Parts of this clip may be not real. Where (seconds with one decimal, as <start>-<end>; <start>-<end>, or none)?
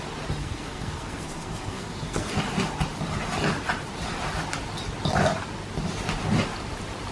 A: 0.4-2.4